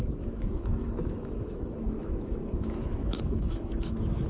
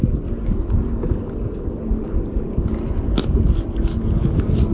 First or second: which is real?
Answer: second